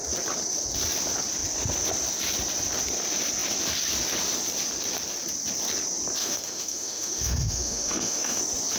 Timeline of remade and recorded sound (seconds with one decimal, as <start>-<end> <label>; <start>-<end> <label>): 0.0-6.2 recorded; 6.2-8.4 remade; 8.4-8.8 recorded